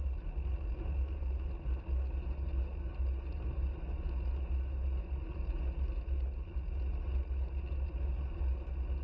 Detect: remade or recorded recorded